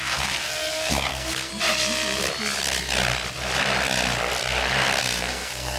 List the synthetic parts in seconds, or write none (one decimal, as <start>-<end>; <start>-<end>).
0.0-1.5; 5.0-5.8